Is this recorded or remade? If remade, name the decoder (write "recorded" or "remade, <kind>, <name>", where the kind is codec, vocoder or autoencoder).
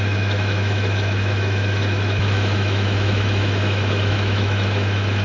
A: remade, autoencoder, DAC-VAE